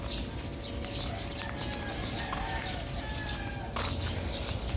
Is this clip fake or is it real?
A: real